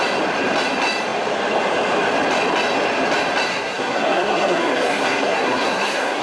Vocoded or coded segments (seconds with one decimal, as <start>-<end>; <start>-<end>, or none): 3.5-6.2